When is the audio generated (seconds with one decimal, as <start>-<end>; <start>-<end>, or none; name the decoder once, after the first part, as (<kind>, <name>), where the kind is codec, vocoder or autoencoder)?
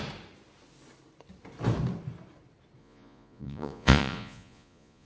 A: 2.8-5.1 (vocoder, Vocos)